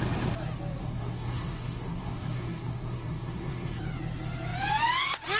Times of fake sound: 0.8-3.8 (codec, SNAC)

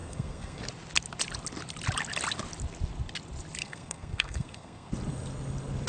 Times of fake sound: 0.0-0.6 (codec, SNAC); 3.6-4.9

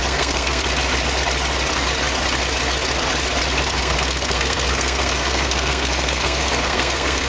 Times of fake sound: 0.0-0.6 (codec, SNAC); 3.8-7.3